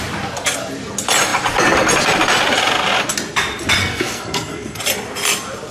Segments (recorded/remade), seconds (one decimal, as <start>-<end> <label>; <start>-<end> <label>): 0.0-3.8 recorded; 3.8-4.8 remade; 4.8-5.7 recorded

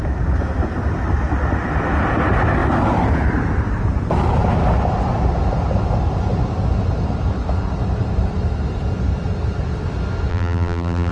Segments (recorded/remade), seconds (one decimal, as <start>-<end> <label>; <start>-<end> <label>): 0.0-10.3 recorded; 10.3-11.1 remade

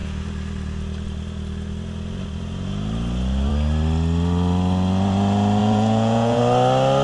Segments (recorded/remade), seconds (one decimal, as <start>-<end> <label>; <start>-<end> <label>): 0.0-5.6 recorded; 5.6-6.4 remade; 6.4-7.0 recorded

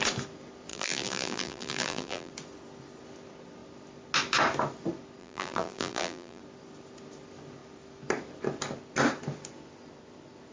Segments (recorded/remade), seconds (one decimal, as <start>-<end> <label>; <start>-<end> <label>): 0.0-0.7 recorded; 0.7-2.3 remade; 2.3-5.2 recorded; 5.2-6.4 remade; 6.4-10.5 recorded

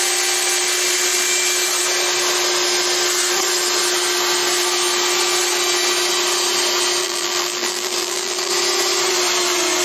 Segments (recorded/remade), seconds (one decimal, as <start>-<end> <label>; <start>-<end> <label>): 0.0-7.0 recorded; 7.0-8.5 remade; 8.5-9.8 recorded

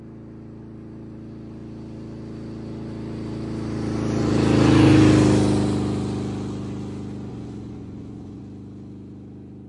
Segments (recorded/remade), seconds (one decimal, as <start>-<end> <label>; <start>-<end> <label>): 0.0-7.3 recorded; 7.3-8.4 remade; 8.4-9.7 recorded

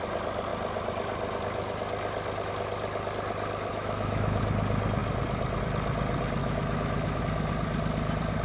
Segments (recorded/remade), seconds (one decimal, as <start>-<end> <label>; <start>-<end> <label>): 0.0-3.7 recorded; 3.7-4.4 remade; 4.4-6.4 recorded; 6.4-7.2 remade; 7.2-8.4 recorded